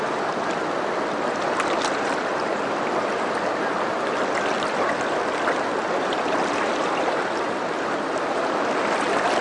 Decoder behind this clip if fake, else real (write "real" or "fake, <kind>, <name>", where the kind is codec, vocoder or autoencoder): real